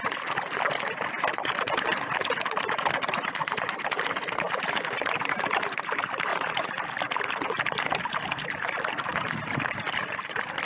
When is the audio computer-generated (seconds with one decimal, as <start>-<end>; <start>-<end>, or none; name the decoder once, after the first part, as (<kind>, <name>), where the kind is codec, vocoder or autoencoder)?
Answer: none